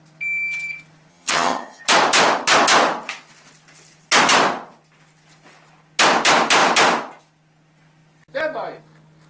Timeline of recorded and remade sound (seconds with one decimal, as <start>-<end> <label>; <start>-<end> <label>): 0.0-1.1 recorded; 1.1-1.8 remade; 1.8-9.3 recorded